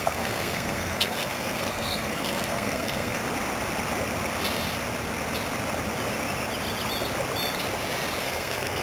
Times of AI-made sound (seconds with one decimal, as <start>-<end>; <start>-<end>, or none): 0.0-3.2; 8.2-8.8

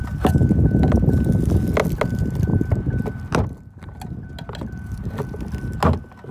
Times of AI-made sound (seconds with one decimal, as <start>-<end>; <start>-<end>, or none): 2.5-5.1